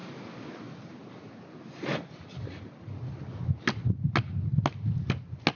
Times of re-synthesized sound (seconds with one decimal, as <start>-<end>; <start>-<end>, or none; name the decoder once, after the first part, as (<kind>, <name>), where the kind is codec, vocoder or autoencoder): none